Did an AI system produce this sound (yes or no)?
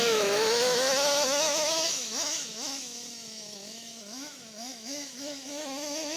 yes